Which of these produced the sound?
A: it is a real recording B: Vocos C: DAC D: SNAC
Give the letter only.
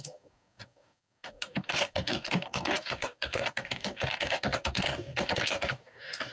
C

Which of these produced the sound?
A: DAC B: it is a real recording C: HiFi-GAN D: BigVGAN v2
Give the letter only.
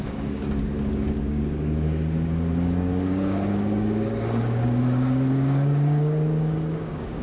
A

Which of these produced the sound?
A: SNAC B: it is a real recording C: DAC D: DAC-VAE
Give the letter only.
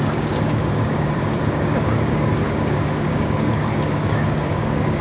C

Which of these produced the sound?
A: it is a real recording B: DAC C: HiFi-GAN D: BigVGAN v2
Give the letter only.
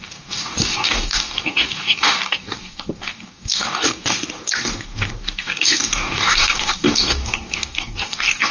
B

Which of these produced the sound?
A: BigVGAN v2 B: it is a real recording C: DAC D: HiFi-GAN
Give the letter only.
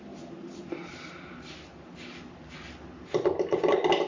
B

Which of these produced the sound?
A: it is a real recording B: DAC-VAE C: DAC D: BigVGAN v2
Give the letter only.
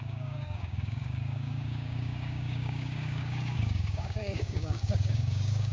C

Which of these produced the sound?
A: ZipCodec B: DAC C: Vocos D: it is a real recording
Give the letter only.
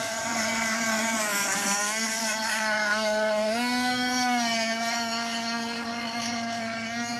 B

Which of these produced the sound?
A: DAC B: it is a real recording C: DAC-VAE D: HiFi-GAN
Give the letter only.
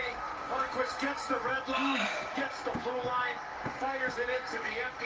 A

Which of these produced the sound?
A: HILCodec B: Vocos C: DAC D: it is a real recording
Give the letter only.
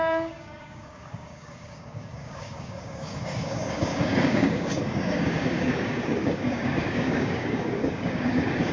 C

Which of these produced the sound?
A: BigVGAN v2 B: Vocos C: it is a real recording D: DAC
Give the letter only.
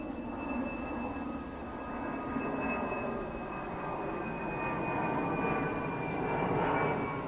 C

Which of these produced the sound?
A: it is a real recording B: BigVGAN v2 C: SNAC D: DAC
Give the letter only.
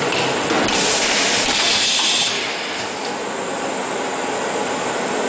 A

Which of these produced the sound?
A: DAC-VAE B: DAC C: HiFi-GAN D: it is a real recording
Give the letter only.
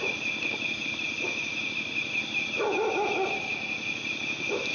D